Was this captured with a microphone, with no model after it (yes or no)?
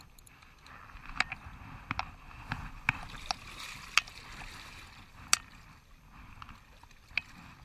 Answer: yes